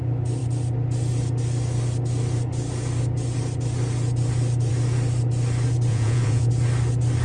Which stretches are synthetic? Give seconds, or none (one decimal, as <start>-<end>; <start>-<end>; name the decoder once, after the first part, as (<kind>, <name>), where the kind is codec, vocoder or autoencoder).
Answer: 5.9-6.5 (vocoder, Vocos)